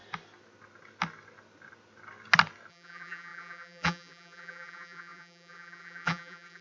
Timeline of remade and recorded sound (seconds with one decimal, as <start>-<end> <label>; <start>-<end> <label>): 0.0-2.7 recorded; 2.7-6.6 remade